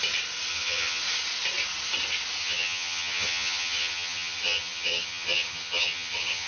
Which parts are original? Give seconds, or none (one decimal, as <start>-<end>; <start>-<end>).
0.0-0.5; 1.0-2.4